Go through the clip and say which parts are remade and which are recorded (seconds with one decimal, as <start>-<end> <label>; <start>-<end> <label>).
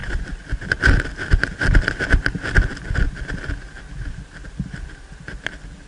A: 0.0-5.9 recorded